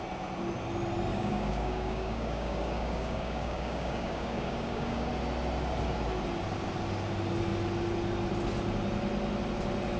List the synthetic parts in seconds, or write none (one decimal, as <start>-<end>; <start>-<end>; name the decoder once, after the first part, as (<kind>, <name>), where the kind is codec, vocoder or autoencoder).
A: 1.1-5.1 (codec, DAC)